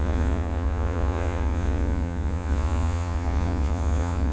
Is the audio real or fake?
fake